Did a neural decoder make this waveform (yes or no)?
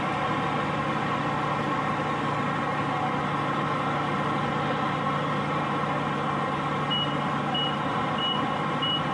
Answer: no